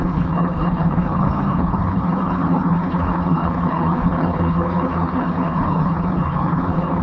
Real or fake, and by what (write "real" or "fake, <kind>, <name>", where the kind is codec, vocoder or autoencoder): fake, codec, HILCodec